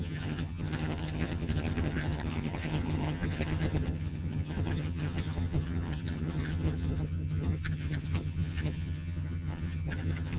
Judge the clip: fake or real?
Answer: fake